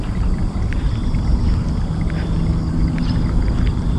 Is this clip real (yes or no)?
yes